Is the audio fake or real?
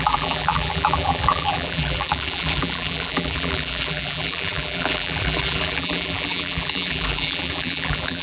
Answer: fake